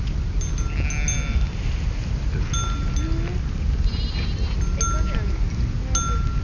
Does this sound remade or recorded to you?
recorded